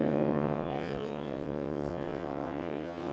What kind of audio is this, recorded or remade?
remade